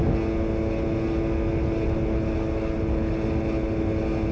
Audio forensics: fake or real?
real